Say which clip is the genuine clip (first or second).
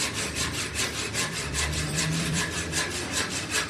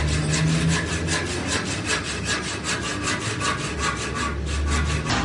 second